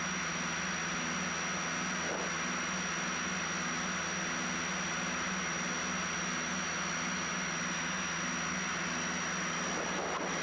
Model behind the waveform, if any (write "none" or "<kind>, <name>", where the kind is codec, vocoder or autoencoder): none